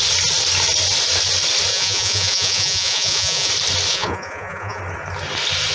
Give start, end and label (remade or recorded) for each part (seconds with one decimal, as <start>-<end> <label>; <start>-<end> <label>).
0.0-1.7 recorded; 1.7-3.5 remade; 3.5-3.9 recorded; 3.9-4.8 remade; 4.8-5.7 recorded